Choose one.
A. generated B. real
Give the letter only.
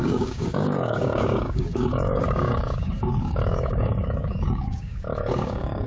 A